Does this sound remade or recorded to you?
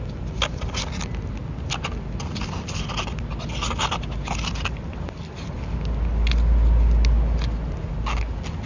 recorded